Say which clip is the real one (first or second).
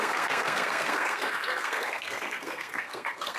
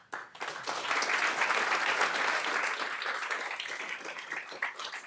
second